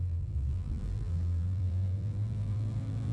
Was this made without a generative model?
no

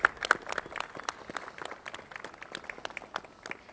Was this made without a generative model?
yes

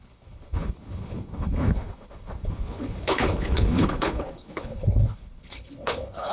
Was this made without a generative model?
no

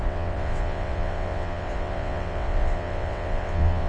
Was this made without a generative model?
no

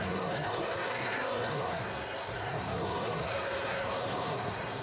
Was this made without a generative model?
no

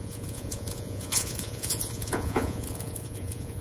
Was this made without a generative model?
no